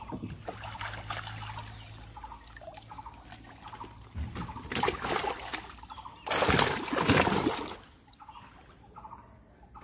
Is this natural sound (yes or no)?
yes